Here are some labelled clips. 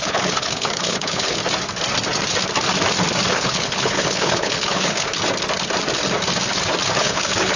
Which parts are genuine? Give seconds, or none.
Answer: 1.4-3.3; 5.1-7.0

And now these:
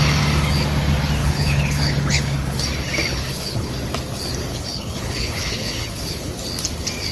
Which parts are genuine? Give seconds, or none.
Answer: 0.0-1.2; 2.6-3.1; 3.7-4.5; 6.3-7.1

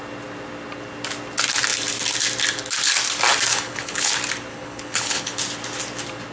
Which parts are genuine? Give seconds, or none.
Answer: 0.0-3.5; 4.1-4.5; 5.4-6.3

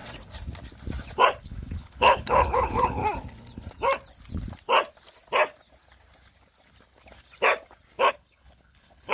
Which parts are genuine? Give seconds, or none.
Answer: 0.0-1.4; 3.0-8.1

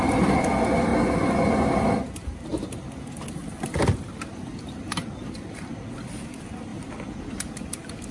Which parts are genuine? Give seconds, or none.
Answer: 0.0-8.1

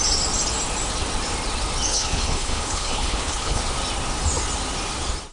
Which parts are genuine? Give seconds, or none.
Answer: 0.0-1.9; 3.6-5.3

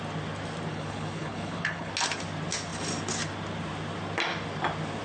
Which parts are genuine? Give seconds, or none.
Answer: 0.0-0.7; 1.9-5.0